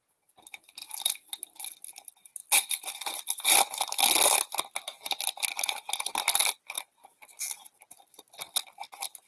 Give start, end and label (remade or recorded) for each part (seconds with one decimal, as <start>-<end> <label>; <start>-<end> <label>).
0.0-0.8 recorded; 0.8-1.3 remade; 1.3-6.4 recorded; 6.4-8.5 remade; 8.5-9.3 recorded